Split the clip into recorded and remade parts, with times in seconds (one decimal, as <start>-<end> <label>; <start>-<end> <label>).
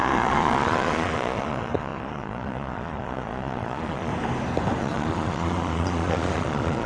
0.0-4.1 remade; 4.1-4.8 recorded; 4.8-6.9 remade